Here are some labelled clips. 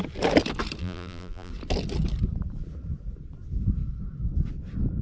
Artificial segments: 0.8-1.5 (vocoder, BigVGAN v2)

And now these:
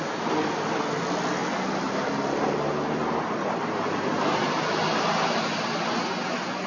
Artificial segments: none

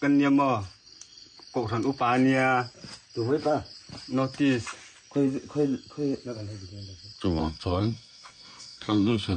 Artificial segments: 7.4-9.4 (codec, SNAC)

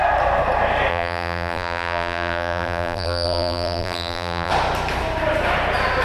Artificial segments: 0.9-4.5 (vocoder, BigVGAN v2)

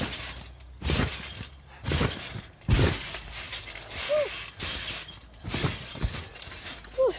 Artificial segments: none

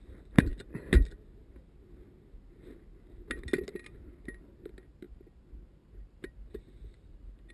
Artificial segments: 5.8-7.5 (vocoder, BigVGAN v2)

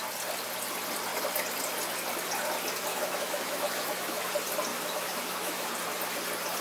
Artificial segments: 2.9-4.2 (autoencoder, DAC-VAE); 4.7-5.7